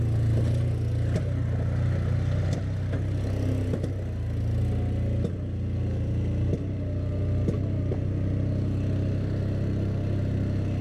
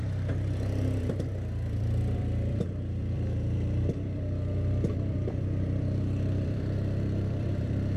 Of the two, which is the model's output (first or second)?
second